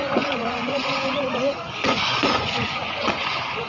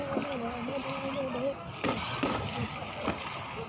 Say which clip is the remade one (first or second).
first